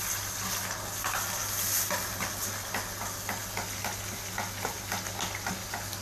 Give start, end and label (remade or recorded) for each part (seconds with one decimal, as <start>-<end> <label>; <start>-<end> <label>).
0.0-6.0 recorded